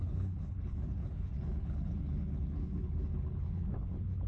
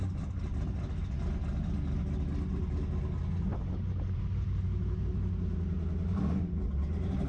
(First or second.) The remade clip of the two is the first